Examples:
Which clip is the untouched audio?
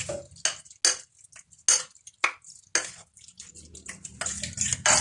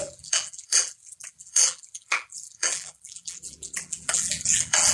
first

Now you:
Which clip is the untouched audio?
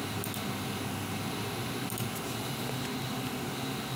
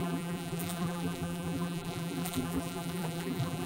first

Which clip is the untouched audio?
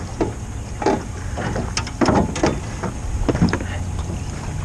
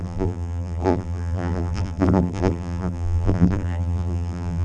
first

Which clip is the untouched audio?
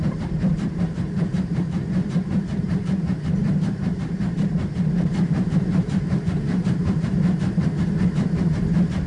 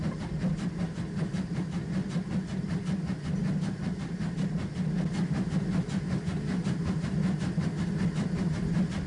second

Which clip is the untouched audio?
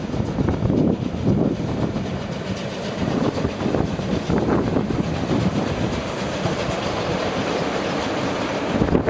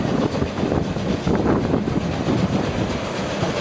second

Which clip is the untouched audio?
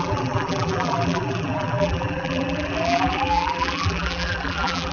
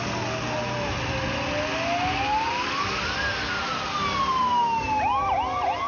second